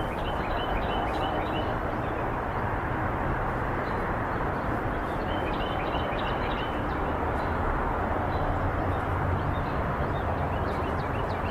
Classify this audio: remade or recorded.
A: remade